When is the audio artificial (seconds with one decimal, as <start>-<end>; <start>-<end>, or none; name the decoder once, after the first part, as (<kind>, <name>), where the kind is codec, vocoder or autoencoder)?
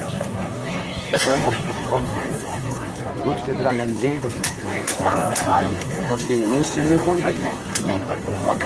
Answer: 0.0-3.1 (codec, SNAC); 3.7-8.7